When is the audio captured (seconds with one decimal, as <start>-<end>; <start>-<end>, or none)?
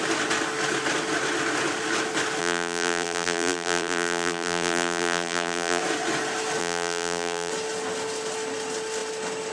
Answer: 0.0-2.4; 5.8-6.6; 7.5-9.5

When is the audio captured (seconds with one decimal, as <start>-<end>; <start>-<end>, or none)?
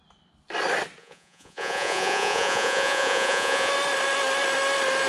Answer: 0.0-1.0; 3.7-5.1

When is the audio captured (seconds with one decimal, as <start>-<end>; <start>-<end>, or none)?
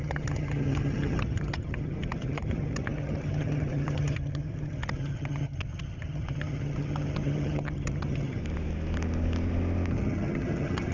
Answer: 8.4-9.9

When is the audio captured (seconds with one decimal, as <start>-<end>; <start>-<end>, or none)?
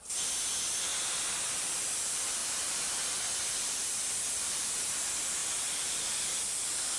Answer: 0.9-1.5